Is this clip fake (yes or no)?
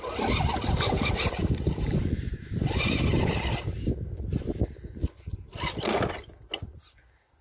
no